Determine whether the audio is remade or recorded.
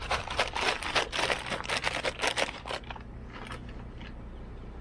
recorded